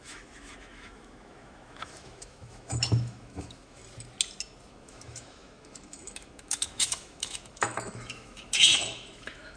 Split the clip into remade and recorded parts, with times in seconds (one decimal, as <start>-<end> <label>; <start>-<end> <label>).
0.0-3.8 remade; 3.8-4.7 recorded; 4.7-9.6 remade